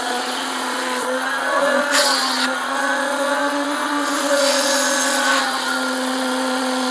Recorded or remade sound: remade